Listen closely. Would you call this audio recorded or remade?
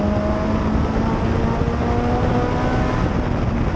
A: recorded